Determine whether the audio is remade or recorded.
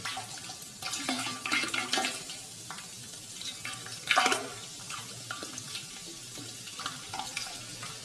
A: recorded